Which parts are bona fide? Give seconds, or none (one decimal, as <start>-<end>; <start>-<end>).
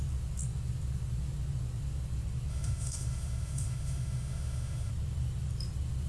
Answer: 0.0-2.5; 4.9-6.1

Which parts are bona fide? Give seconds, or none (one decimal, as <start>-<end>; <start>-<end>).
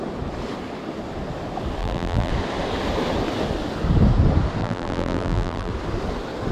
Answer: 0.0-1.8; 2.3-4.6; 5.7-6.5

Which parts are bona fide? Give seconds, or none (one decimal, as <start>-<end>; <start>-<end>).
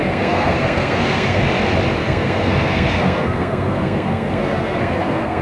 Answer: 1.4-2.0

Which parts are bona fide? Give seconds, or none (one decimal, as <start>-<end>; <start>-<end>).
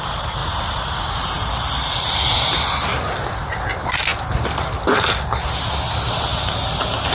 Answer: 0.0-7.1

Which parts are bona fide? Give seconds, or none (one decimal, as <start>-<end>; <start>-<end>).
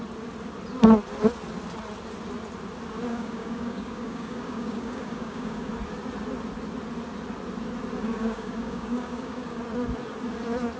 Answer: 0.0-3.1; 5.7-8.0; 9.6-10.8